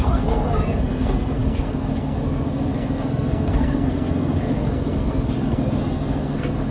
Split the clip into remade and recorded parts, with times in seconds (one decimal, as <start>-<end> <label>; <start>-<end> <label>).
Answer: 0.0-6.7 remade